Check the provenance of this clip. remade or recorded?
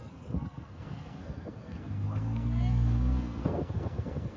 remade